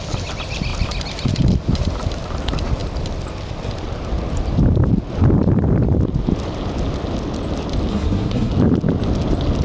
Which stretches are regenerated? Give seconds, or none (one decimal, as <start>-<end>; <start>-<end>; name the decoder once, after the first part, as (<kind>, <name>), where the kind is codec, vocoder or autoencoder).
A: 7.9-8.5 (codec, SNAC)